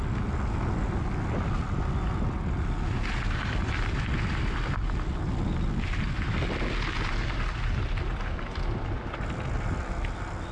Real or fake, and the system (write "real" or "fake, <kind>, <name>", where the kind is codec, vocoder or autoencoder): real